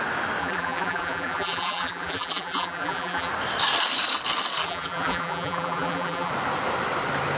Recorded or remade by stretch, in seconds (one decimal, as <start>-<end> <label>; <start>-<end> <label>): 0.0-0.4 recorded; 0.4-3.3 remade; 3.3-4.6 recorded; 4.6-6.3 remade; 6.3-7.4 recorded